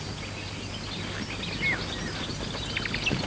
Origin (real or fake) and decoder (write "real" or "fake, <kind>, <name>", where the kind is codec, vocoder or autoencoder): real